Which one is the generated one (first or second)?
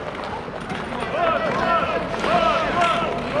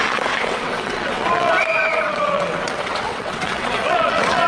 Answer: second